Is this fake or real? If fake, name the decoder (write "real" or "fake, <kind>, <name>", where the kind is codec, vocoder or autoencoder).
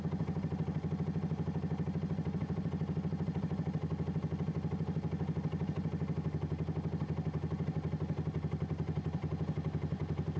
real